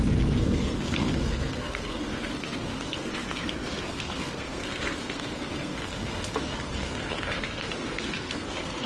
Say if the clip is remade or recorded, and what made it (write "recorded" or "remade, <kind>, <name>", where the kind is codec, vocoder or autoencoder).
remade, codec, SNAC